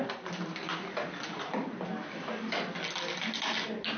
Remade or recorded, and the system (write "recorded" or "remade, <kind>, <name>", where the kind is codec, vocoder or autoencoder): recorded